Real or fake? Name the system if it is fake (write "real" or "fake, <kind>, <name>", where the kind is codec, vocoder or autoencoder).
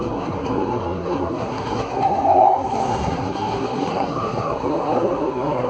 fake, codec, SNAC